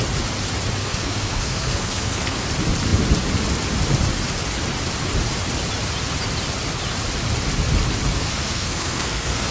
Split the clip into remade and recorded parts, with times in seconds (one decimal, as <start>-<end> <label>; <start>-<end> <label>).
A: 0.0-0.8 recorded; 0.8-2.5 remade; 2.5-8.2 recorded; 8.2-9.5 remade